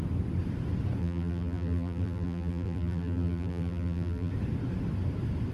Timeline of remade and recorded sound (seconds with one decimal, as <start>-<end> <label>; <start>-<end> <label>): 0.0-1.0 recorded; 1.0-4.3 remade; 4.3-5.5 recorded